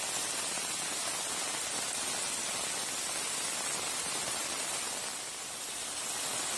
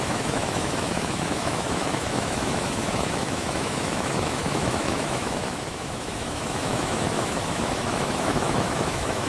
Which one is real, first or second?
first